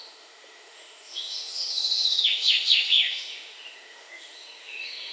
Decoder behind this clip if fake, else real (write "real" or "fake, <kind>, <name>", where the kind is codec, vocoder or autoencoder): fake, autoencoder, DAC-VAE